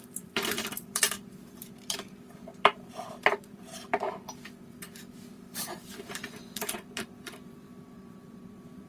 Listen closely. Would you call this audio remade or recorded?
remade